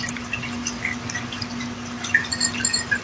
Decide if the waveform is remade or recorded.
recorded